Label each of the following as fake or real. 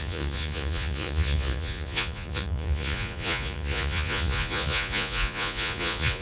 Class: fake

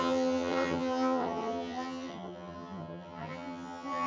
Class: fake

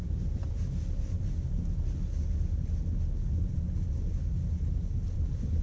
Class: real